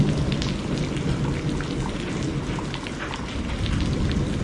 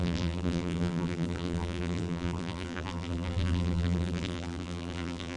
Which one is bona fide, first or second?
first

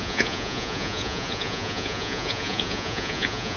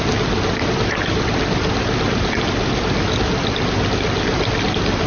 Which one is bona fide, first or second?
second